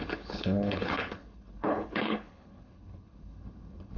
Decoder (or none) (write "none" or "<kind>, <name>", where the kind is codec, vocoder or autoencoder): codec, HILCodec